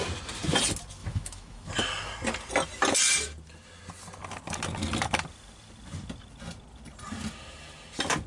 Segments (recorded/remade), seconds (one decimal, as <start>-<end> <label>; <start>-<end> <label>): 0.0-1.0 recorded; 1.0-1.7 remade; 1.7-8.3 recorded